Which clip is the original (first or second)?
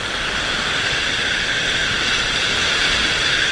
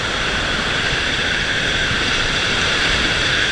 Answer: first